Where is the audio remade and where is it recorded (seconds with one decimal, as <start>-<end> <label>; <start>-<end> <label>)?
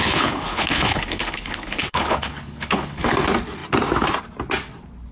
0.0-3.1 remade; 3.1-5.1 recorded